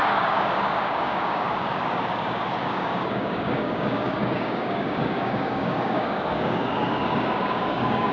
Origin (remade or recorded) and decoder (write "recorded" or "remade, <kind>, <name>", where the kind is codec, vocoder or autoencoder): remade, codec, DAC